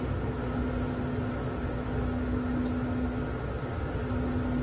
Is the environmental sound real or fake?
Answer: real